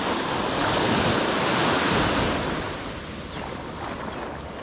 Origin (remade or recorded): recorded